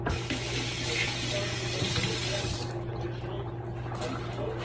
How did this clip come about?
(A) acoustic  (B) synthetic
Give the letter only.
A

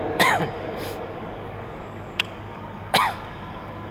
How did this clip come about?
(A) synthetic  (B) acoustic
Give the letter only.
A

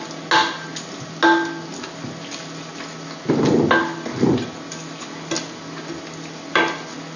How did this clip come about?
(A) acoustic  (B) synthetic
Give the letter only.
A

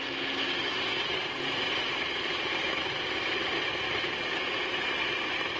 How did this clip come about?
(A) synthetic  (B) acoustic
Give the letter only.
B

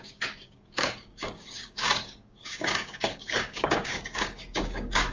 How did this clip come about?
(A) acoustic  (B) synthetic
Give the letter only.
B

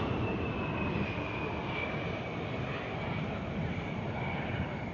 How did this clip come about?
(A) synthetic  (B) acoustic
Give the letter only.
B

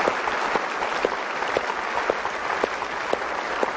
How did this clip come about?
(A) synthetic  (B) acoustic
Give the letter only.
B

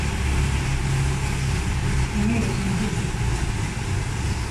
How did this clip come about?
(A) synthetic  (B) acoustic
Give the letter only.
B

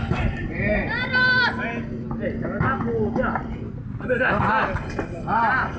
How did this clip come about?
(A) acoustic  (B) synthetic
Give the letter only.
A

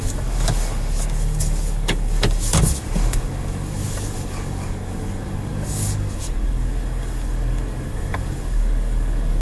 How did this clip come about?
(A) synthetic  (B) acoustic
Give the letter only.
A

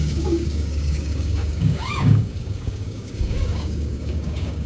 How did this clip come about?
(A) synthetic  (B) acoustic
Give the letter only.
A